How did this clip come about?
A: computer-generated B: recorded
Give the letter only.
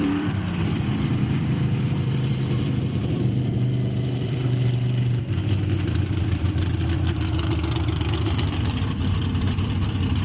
A